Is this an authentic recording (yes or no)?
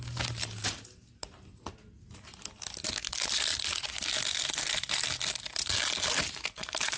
yes